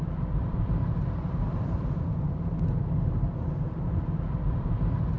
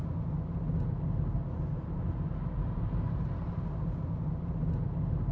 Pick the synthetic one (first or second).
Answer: first